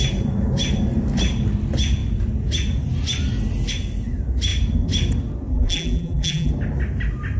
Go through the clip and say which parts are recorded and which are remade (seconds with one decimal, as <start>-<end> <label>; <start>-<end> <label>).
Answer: 0.0-5.5 recorded; 5.5-6.5 remade; 6.5-7.4 recorded